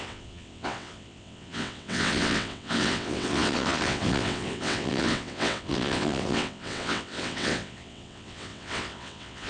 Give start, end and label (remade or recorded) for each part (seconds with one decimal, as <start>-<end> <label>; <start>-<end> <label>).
0.0-9.5 remade